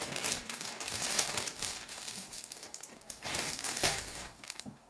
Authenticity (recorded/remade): remade